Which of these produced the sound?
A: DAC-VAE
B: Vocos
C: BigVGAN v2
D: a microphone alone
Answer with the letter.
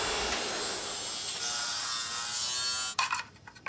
D